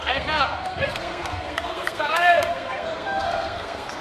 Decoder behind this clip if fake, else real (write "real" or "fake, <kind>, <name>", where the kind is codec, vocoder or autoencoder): fake, codec, SNAC